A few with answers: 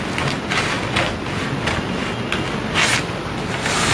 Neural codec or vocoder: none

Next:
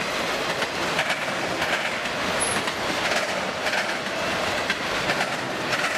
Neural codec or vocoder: none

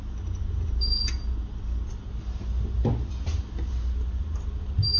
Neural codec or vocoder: none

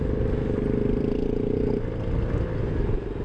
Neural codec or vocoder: none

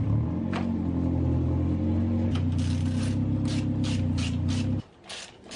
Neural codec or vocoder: none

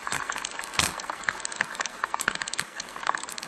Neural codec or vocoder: codec, SNAC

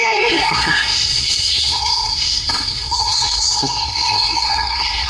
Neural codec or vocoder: codec, SNAC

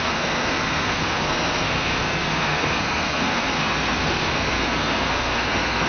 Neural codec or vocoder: codec, SNAC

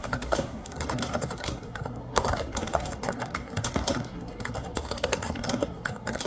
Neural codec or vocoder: codec, SNAC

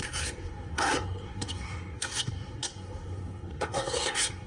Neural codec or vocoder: codec, SNAC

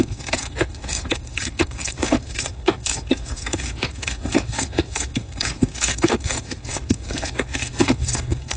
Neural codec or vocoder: codec, SNAC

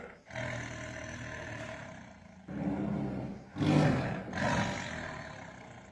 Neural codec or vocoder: none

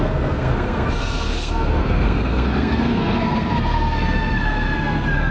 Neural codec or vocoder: codec, SNAC